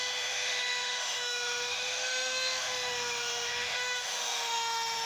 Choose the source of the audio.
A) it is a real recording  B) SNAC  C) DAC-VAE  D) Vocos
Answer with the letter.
C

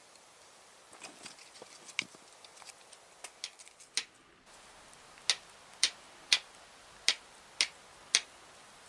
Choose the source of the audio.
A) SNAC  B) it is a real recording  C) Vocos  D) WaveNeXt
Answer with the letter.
B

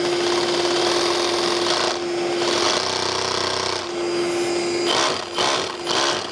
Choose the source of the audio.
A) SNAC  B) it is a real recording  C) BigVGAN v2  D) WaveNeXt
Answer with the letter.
B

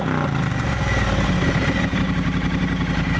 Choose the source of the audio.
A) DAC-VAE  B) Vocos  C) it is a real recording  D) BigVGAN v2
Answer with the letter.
C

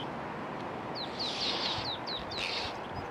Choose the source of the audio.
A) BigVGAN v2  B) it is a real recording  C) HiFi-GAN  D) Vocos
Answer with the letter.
B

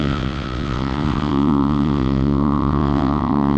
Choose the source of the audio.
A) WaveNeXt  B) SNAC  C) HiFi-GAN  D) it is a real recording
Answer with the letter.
A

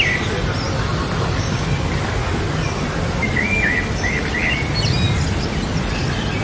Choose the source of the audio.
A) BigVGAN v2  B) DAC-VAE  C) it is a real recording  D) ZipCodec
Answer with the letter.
C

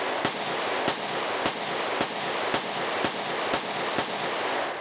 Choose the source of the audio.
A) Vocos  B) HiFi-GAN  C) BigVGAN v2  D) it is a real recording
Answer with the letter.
D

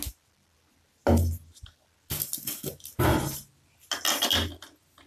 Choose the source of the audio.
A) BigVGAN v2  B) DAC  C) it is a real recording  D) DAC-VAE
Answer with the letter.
C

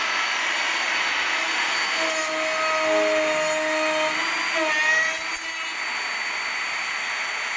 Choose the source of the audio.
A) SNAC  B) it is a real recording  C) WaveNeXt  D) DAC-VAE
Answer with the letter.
B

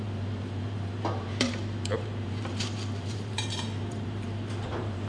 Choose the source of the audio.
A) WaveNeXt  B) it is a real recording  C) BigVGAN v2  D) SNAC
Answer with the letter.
C